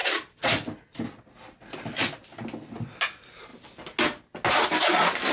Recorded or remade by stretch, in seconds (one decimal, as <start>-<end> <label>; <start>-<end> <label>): 0.0-5.3 recorded

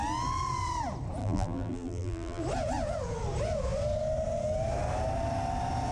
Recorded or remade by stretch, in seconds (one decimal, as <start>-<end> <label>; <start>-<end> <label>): 0.0-1.2 recorded; 1.2-2.4 remade; 2.4-5.9 recorded

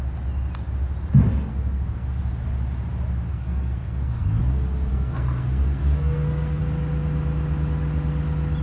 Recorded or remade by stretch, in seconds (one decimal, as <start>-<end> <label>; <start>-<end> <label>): 0.0-1.5 recorded; 1.5-2.2 remade; 2.2-3.3 recorded; 3.3-4.4 remade; 4.4-4.9 recorded; 4.9-6.6 remade; 6.6-8.6 recorded

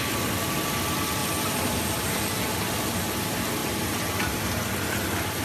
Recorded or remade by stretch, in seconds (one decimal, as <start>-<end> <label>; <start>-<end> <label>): 0.0-1.2 recorded; 1.2-2.5 remade; 2.5-5.4 recorded